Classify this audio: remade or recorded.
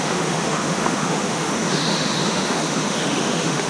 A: remade